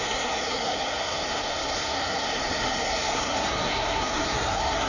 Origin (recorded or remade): remade